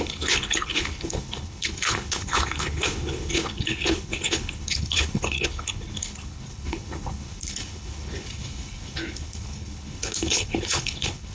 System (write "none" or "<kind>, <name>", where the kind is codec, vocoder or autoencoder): codec, HILCodec